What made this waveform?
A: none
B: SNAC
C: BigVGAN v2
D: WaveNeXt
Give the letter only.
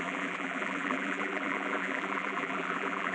C